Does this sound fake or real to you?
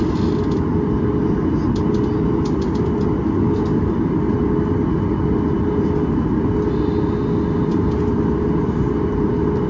real